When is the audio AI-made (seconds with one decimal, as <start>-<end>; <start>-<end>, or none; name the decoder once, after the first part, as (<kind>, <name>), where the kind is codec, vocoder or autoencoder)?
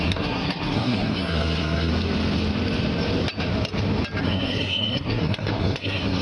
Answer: 0.0-1.9 (codec, SNAC); 4.2-6.2